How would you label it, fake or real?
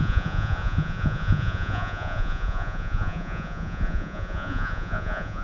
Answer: fake